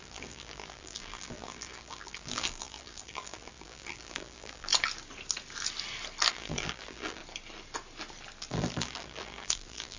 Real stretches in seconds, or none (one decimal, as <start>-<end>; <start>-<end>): 4.7-6.3; 7.2-8.5